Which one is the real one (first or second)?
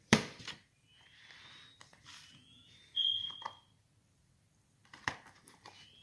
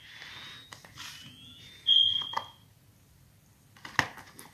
second